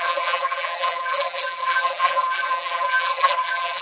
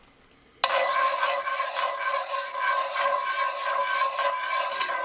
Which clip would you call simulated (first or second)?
first